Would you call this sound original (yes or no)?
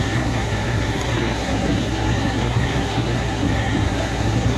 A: no